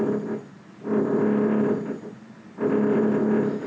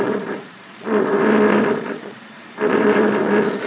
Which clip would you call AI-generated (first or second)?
second